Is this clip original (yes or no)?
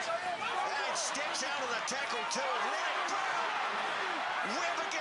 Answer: yes